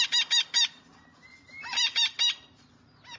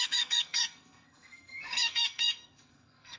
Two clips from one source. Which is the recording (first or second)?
first